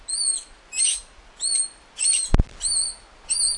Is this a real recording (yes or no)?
yes